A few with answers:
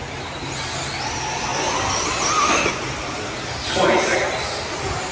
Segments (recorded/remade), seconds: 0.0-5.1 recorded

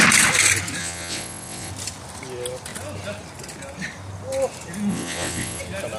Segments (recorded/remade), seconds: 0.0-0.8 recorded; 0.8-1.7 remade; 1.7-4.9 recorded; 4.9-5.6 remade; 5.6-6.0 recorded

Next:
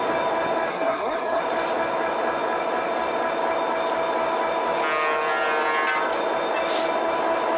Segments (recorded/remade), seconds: 0.0-0.7 recorded; 0.7-1.4 remade; 1.4-7.6 recorded